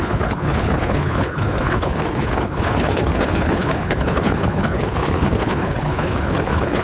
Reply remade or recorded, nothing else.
remade